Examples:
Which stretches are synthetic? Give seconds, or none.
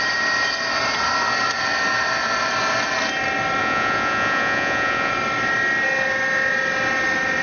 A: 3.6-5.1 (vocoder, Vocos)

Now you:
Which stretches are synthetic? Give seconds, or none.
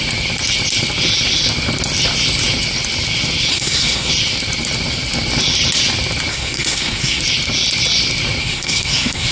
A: 3.5-4.1 (codec, SNAC); 6.3-7.2; 8.4-9.3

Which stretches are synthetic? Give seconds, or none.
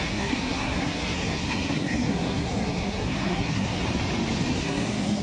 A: 0.0-3.8 (codec, SNAC); 4.5-5.2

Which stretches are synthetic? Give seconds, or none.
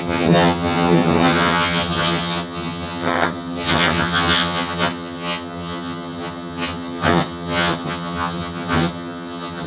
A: 0.0-9.7 (vocoder, HiFi-GAN)